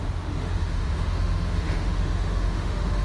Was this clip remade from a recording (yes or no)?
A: yes